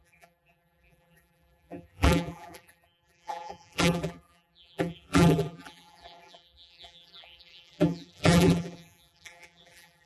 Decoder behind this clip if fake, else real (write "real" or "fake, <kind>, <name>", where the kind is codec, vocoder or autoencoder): fake, vocoder, BigVGAN v2